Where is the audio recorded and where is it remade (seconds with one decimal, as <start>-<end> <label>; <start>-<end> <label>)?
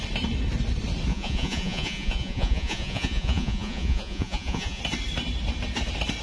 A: 0.0-1.1 recorded; 1.1-4.8 remade; 4.8-6.2 recorded